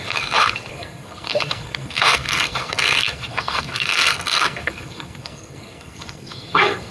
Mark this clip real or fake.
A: fake